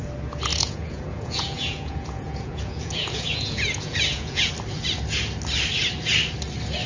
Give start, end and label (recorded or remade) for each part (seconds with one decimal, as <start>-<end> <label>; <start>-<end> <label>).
0.0-0.5 recorded; 0.5-4.5 remade; 4.5-6.9 recorded